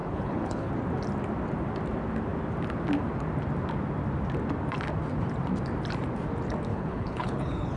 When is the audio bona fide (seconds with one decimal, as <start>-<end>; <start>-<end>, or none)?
0.7-6.7